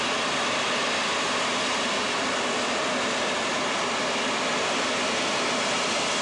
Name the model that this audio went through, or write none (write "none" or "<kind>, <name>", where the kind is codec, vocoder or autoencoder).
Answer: none